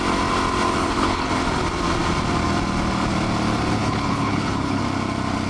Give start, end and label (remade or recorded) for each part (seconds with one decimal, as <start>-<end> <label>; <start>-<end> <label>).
0.0-0.8 recorded; 0.8-1.3 remade; 1.3-3.8 recorded; 3.8-4.8 remade; 4.8-5.5 recorded